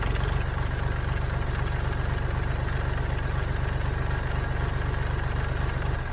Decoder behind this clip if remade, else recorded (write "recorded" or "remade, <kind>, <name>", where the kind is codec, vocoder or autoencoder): recorded